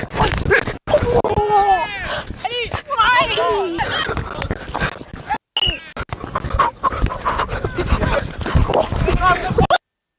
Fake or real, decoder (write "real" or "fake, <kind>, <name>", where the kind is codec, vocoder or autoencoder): real